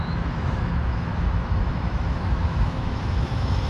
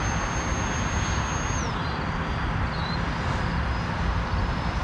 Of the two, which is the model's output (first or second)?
first